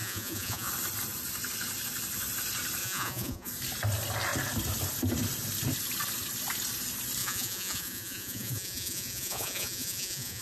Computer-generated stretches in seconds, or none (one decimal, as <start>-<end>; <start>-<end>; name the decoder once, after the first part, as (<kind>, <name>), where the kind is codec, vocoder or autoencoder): 0.0-0.7 (vocoder, Vocos); 2.8-3.5; 7.2-10.4